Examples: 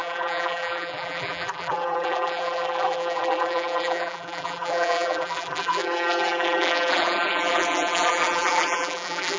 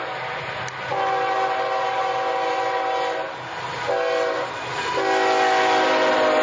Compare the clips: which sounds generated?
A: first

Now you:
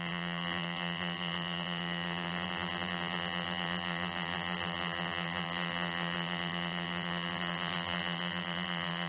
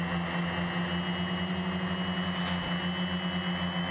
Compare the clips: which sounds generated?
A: first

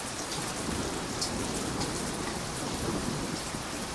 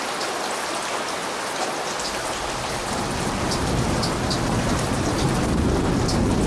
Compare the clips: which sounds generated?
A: first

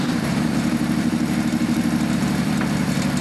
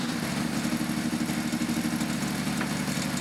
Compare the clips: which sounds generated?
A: first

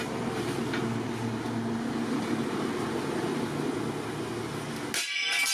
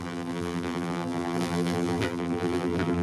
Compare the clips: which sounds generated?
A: second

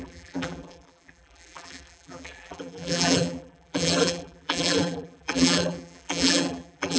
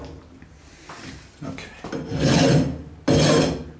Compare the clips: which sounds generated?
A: first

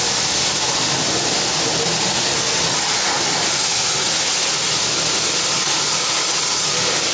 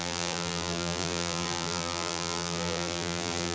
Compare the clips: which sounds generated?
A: second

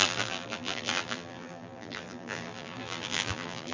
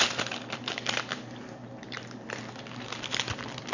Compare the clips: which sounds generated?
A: first